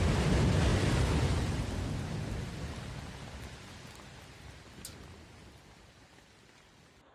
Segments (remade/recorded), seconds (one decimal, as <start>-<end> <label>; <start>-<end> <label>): 0.0-7.1 recorded